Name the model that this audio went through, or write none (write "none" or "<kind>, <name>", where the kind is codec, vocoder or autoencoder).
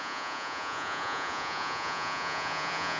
vocoder, Vocos